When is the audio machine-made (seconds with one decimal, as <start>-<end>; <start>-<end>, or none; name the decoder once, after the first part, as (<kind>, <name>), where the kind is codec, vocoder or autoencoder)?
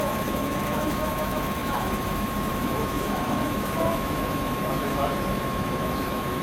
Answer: 0.0-6.4 (autoencoder, DAC-VAE)